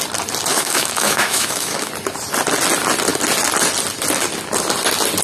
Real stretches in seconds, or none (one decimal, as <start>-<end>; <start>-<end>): 0.0-0.5; 1.9-5.2